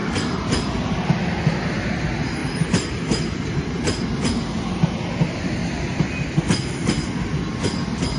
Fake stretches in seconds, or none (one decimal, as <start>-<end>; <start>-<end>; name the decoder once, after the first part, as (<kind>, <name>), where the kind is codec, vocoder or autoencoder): 0.0-1.0 (vocoder, BigVGAN v2); 2.4-4.6